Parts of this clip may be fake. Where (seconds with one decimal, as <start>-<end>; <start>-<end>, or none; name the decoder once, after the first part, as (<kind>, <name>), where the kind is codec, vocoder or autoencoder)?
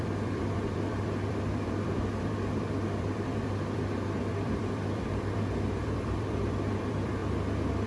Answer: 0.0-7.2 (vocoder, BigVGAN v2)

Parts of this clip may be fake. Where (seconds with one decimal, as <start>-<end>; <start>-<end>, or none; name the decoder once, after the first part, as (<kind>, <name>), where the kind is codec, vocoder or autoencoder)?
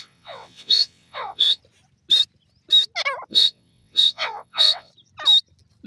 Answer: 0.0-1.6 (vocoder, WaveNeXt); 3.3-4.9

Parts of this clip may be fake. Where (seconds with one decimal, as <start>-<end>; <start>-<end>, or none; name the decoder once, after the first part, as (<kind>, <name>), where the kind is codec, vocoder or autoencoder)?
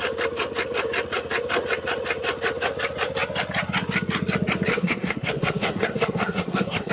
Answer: 4.7-6.9 (codec, SNAC)